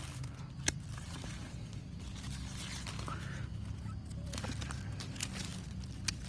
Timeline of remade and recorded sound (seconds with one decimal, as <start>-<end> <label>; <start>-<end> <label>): 0.0-6.3 recorded